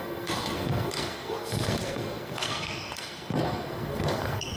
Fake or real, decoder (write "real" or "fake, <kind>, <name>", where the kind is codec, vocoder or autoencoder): fake, codec, SNAC